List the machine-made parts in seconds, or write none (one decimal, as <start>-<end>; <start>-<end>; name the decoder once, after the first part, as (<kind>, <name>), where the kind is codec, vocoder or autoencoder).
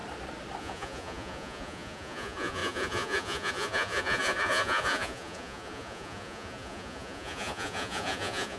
0.6-8.6 (vocoder, Vocos)